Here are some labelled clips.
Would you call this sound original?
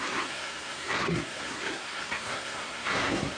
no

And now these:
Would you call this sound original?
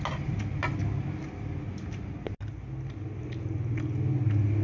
yes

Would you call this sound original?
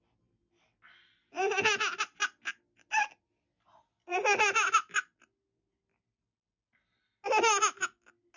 yes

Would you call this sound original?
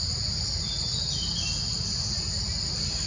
yes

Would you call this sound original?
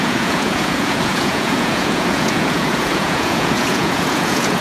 no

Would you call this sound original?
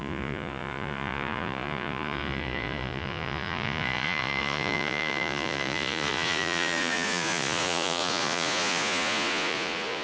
no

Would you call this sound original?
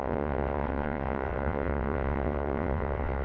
no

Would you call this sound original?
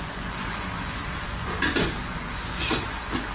no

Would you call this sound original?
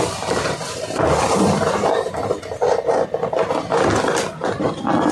yes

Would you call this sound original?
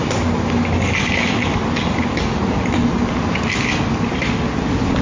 yes